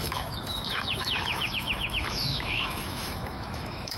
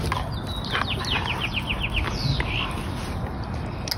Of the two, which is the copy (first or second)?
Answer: first